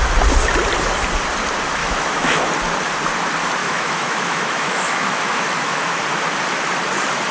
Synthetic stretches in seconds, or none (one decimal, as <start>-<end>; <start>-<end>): 1.8-2.4; 3.6-6.0